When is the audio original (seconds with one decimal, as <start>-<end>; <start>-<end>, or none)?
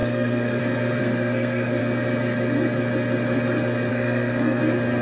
0.6-1.0; 1.8-3.9; 4.6-5.0